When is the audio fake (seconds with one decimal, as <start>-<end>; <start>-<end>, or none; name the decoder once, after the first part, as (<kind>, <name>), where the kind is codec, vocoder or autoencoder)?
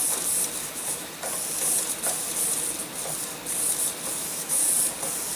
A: 0.6-1.1 (autoencoder, DAC-VAE); 4.2-4.7